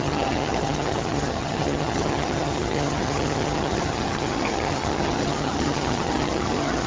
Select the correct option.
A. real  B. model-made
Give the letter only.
B